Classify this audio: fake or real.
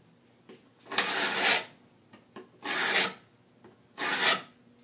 real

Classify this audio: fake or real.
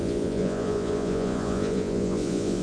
fake